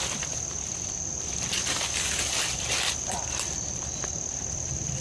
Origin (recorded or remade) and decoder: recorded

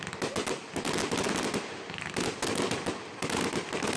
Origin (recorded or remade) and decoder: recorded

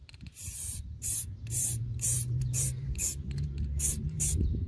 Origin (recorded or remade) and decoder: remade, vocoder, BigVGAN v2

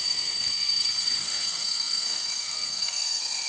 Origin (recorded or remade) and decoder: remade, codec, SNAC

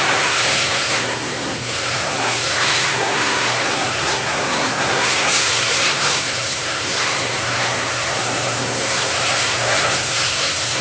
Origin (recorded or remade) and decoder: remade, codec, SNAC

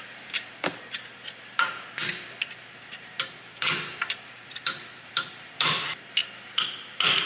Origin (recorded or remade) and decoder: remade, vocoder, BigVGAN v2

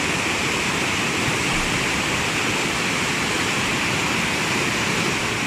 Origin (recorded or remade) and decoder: recorded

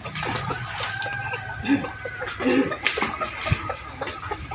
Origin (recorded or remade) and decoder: recorded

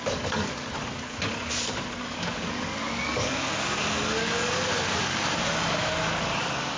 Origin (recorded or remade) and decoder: remade, codec, DAC